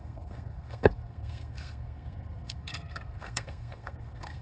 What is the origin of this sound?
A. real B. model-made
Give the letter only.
B